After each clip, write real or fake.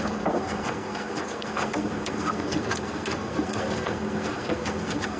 fake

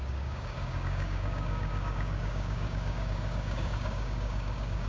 fake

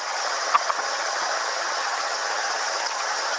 fake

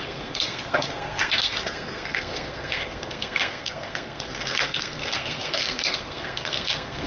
fake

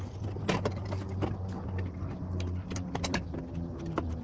real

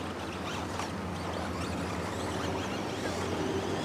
real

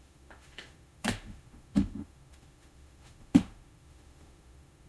fake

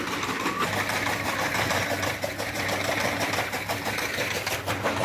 real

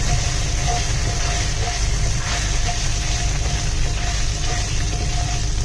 real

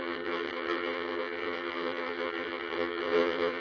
fake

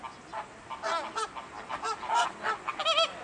real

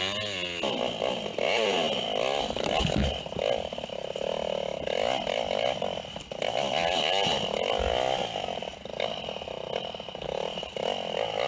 real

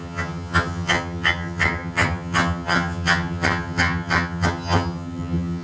fake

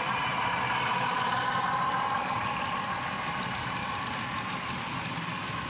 real